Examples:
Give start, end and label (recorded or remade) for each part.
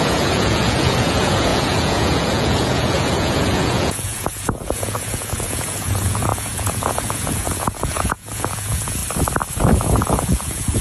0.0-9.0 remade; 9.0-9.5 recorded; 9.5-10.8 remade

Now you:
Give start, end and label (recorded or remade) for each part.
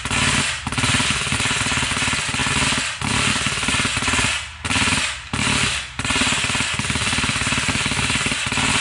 0.0-8.8 recorded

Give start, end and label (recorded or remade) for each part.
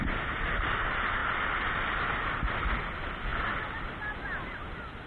0.0-5.1 recorded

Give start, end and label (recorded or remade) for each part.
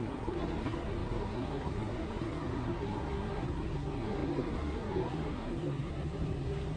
0.0-6.8 remade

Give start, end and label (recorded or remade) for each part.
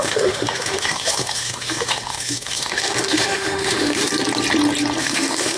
0.0-4.1 remade; 4.1-5.0 recorded; 5.0-5.6 remade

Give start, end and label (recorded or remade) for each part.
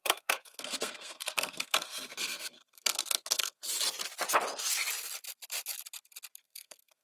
0.0-3.6 remade; 3.6-6.4 recorded; 6.4-7.0 remade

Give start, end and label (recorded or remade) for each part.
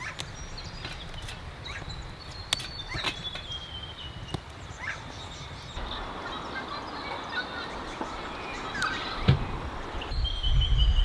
0.0-9.0 recorded; 9.0-10.4 remade; 10.4-11.0 recorded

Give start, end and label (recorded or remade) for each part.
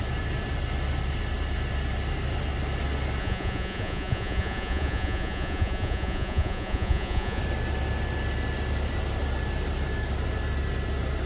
0.0-3.2 recorded; 3.2-7.4 remade; 7.4-11.3 recorded